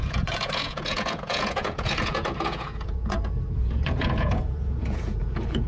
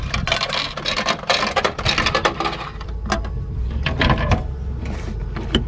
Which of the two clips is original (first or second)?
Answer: second